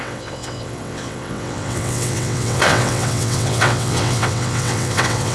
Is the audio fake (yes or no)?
yes